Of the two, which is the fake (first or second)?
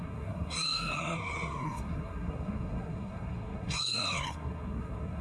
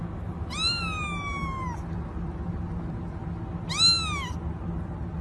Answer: first